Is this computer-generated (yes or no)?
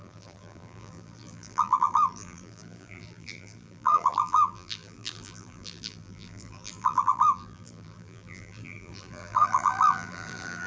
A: yes